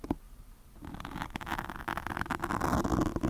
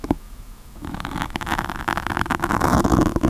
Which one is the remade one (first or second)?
second